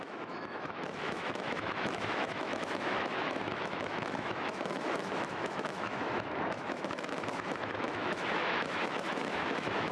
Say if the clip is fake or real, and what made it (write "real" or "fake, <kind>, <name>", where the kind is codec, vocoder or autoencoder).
fake, autoencoder, DAC-VAE